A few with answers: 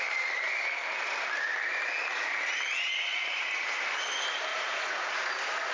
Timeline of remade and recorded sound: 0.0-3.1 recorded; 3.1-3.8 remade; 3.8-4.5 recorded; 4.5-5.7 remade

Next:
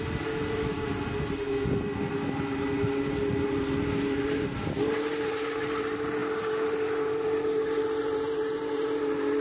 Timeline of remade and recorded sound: 0.0-9.4 recorded

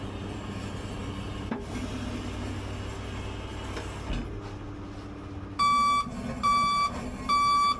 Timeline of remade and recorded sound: 0.0-7.8 recorded

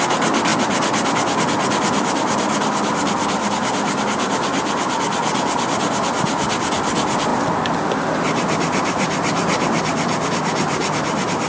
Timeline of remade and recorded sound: 0.0-11.5 recorded

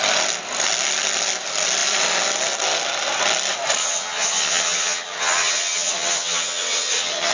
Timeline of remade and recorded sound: 0.0-3.8 recorded; 3.8-7.3 remade

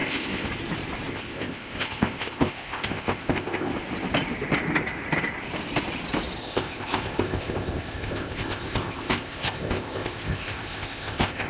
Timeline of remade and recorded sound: 0.0-0.5 remade; 0.5-1.1 recorded; 1.1-3.7 remade; 3.7-6.4 recorded; 6.4-11.5 remade

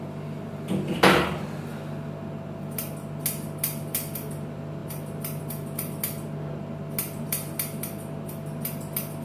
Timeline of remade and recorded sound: 0.0-9.2 recorded